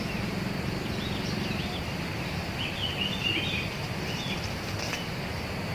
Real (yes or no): yes